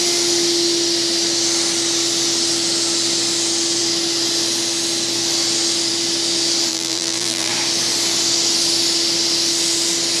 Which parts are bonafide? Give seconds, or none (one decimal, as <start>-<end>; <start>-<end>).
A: 0.0-6.7; 7.5-10.2